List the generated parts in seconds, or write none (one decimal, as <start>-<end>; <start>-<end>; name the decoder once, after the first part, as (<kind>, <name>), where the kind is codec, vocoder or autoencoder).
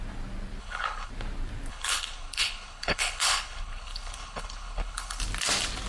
0.6-1.1 (codec, HILCodec); 1.7-5.2